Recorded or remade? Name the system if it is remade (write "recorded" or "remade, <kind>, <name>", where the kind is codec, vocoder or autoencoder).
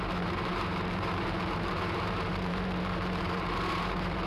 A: remade, vocoder, BigVGAN v2